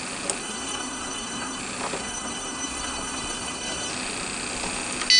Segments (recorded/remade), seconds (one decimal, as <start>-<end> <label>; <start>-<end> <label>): 0.0-0.4 recorded; 0.4-1.6 remade; 1.6-2.0 recorded; 2.0-3.9 remade; 3.9-5.2 recorded